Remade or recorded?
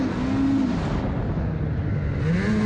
recorded